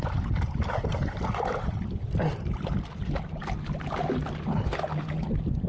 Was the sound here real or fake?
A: real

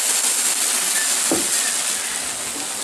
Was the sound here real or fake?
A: real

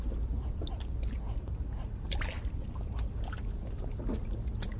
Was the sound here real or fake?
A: real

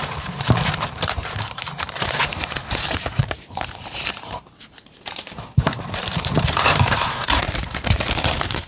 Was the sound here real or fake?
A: fake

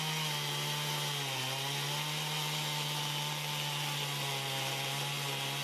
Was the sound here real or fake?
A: real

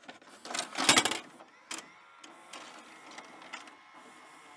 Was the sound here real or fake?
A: real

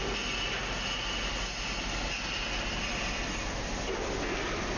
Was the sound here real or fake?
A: real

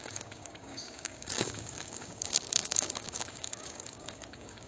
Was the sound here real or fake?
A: fake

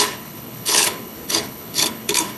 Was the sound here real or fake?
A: fake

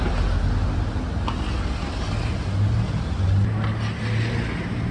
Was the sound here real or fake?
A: real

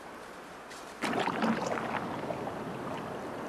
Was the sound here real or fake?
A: real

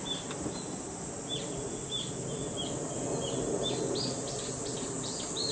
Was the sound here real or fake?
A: real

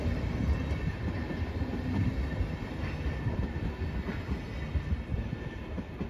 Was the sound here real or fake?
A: real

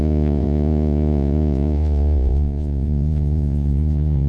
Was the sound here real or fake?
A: fake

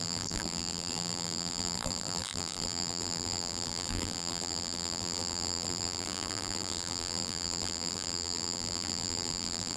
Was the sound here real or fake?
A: fake